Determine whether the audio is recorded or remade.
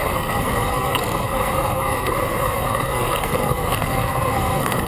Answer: remade